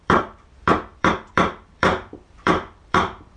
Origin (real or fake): fake